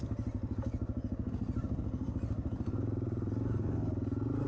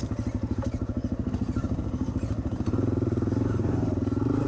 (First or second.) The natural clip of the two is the first